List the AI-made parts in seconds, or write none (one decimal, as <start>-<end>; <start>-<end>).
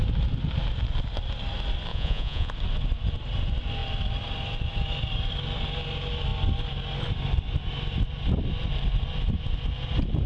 1.9-2.5